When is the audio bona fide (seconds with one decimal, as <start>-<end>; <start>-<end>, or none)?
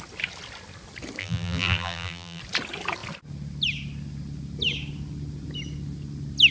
0.0-1.2; 2.4-6.5